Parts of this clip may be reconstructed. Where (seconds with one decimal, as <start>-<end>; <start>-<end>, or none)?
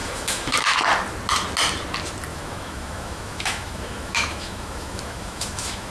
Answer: 0.0-0.8; 2.3-5.9